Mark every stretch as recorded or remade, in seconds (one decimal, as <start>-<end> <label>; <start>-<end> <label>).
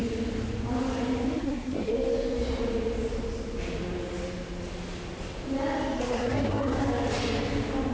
0.0-1.4 recorded; 1.4-1.9 remade; 1.9-6.0 recorded; 6.0-6.8 remade; 6.8-7.9 recorded